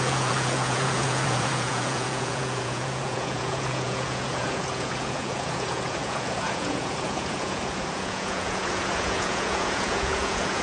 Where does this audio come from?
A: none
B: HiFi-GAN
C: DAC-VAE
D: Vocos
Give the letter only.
D